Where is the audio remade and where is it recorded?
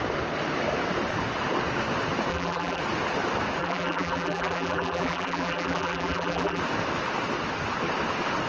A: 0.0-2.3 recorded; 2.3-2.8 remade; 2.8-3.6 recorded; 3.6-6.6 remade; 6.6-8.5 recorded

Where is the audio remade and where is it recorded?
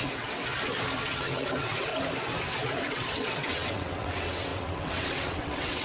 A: 0.0-0.4 remade; 0.4-1.0 recorded; 1.0-1.9 remade; 1.9-2.9 recorded; 2.9-5.8 remade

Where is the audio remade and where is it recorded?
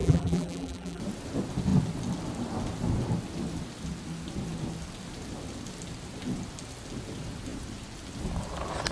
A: 0.0-1.0 remade; 1.0-8.9 recorded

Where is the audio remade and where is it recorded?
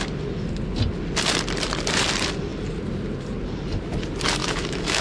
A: 0.0-4.4 recorded; 4.4-5.0 remade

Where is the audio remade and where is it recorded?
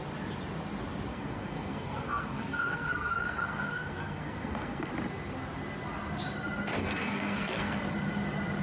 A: 0.0-1.1 recorded; 1.1-4.9 remade; 4.9-6.8 recorded; 6.8-7.8 remade; 7.8-8.6 recorded